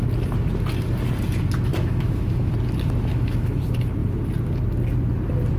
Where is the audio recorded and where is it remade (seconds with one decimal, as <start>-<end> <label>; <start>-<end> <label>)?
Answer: 0.0-1.7 recorded; 1.7-2.5 remade; 2.5-3.1 recorded; 3.1-3.6 remade; 3.6-5.6 recorded